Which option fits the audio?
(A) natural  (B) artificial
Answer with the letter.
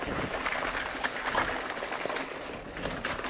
A